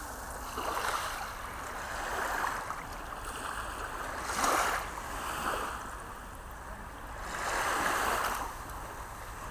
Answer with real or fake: real